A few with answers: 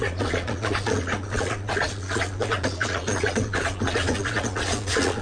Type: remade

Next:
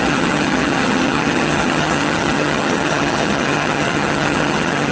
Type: remade